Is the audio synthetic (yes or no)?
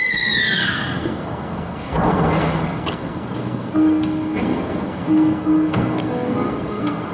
yes